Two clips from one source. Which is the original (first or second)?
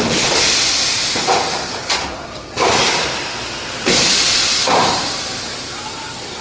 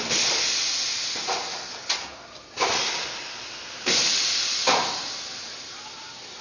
second